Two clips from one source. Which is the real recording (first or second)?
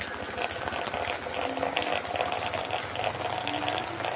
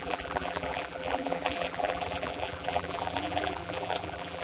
first